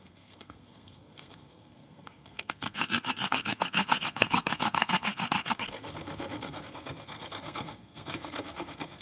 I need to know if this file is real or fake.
fake